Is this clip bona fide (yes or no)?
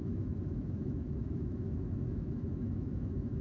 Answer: no